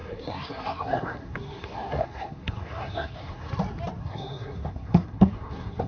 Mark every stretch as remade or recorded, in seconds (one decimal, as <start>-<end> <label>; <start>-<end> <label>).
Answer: 0.0-3.5 remade; 3.5-4.0 recorded; 4.0-5.9 remade